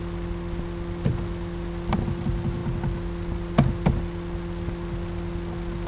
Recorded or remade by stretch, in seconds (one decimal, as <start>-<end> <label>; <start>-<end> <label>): 0.0-5.9 recorded